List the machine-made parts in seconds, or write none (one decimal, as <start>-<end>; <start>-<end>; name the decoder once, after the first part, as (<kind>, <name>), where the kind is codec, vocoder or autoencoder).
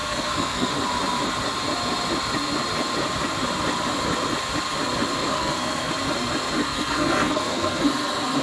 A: 0.0-0.7 (codec, SNAC); 5.2-5.9; 6.6-7.8